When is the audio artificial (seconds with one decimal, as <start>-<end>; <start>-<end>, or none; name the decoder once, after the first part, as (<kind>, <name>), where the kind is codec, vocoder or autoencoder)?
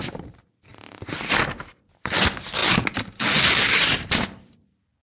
none